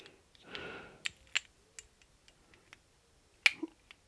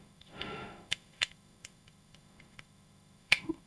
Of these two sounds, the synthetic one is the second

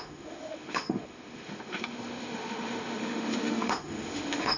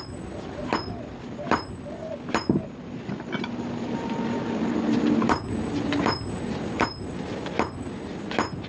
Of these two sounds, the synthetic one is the first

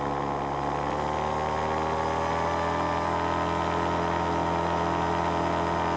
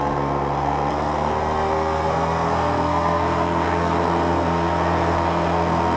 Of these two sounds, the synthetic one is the second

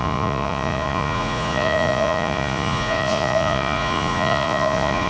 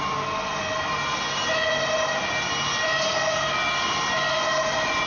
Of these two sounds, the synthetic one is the first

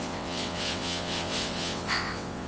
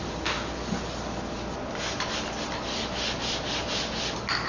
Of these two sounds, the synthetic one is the first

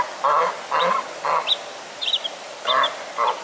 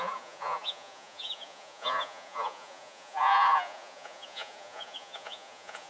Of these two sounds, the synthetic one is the second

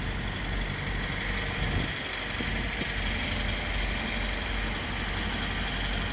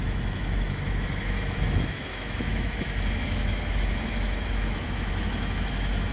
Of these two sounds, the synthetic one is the second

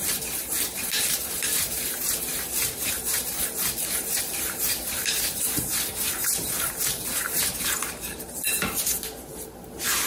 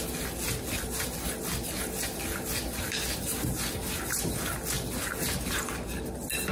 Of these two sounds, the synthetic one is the first